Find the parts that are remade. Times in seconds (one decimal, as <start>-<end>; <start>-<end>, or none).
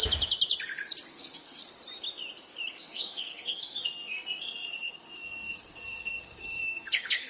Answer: 1.1-1.6; 2.8-7.3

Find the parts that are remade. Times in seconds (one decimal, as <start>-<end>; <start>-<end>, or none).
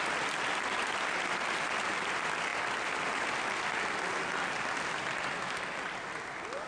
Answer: none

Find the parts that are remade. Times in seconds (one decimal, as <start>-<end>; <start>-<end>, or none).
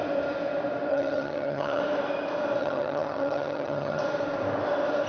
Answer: 0.9-1.8; 2.6-4.0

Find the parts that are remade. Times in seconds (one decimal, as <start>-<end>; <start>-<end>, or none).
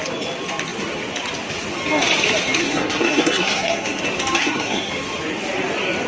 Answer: 2.6-4.0; 4.4-4.9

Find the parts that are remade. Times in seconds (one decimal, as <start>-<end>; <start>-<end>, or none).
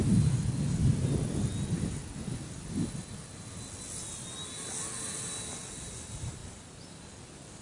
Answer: 6.4-7.0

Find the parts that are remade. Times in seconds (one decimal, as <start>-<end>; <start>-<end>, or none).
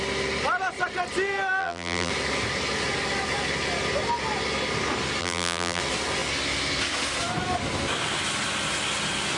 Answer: 1.6-2.1; 5.2-5.8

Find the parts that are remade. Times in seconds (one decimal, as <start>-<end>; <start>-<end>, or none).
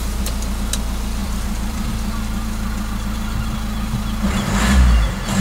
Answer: 1.2-1.9